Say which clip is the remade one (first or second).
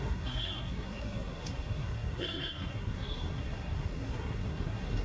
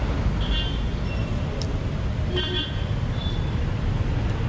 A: first